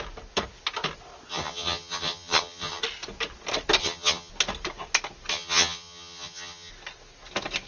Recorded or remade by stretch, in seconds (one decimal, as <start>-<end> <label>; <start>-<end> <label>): 0.0-1.3 recorded; 1.3-2.8 remade; 2.8-3.8 recorded; 3.8-4.3 remade; 4.3-5.3 recorded; 5.3-6.7 remade; 6.7-7.7 recorded